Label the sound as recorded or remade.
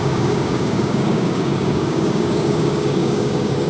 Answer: remade